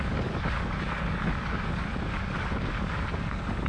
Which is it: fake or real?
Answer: fake